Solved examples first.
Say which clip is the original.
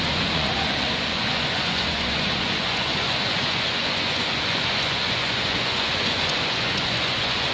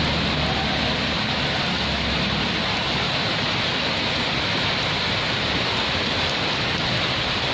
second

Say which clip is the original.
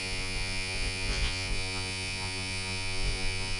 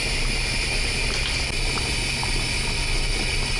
second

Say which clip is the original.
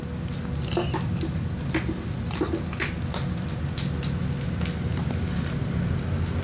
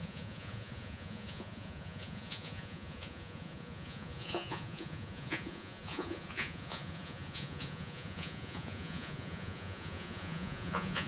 first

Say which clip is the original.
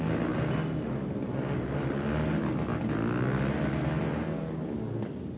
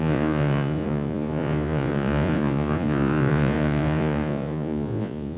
first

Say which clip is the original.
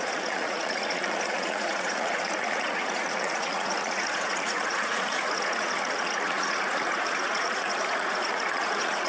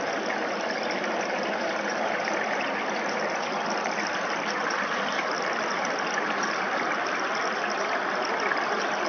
second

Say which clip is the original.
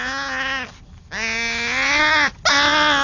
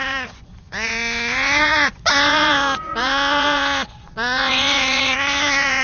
first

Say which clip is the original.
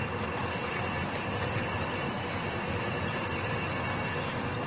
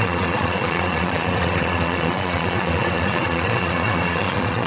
first